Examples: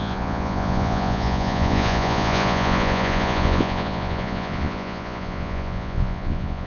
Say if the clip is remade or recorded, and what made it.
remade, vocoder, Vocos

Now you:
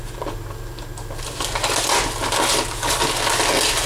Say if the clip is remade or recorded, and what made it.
recorded